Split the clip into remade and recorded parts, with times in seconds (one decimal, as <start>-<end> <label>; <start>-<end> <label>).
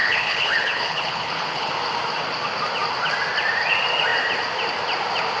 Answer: 0.0-1.7 remade; 1.7-5.4 recorded